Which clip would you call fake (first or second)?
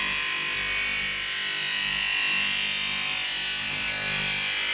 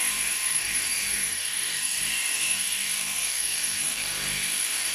second